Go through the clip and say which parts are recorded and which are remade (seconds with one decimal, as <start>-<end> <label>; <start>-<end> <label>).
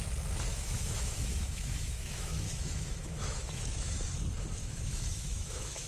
0.0-0.5 recorded; 0.5-4.0 remade; 4.0-4.6 recorded; 4.6-5.9 remade